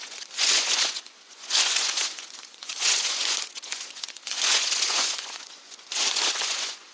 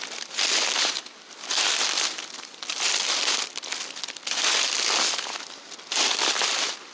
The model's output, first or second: first